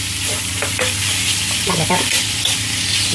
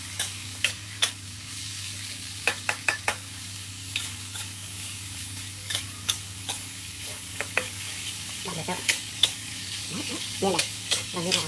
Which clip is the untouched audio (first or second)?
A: first